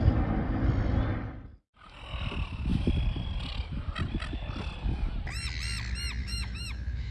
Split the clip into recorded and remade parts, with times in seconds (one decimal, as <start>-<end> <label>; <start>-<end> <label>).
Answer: 0.0-6.2 recorded; 6.2-7.1 remade